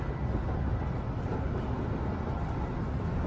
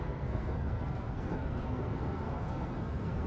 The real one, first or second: first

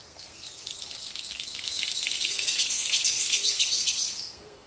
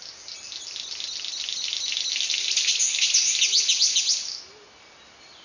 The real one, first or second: second